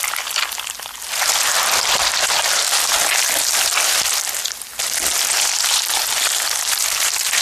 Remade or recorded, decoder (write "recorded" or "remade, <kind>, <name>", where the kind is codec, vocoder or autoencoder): recorded